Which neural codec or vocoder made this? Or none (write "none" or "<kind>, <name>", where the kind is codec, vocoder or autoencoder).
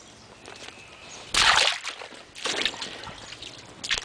none